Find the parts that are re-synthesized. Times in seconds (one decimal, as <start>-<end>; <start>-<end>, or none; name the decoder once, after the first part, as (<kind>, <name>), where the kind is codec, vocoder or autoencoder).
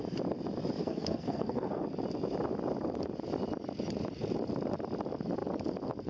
0.8-1.8 (codec, SNAC)